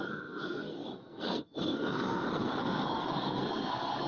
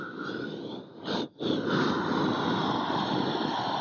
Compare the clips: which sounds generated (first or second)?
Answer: first